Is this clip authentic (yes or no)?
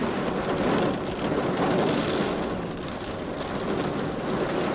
yes